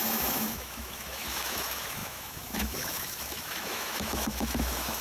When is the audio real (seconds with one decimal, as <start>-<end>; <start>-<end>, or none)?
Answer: none